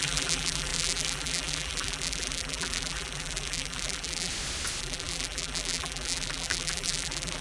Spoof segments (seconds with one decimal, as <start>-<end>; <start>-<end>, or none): 0.0-4.3; 4.8-7.4